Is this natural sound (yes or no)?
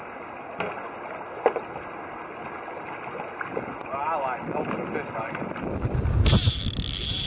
yes